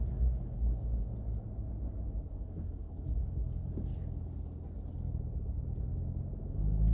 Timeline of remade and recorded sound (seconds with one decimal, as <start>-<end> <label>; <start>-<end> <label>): 0.0-1.1 remade; 1.1-2.3 recorded; 2.3-3.9 remade; 3.9-6.5 recorded; 6.5-6.9 remade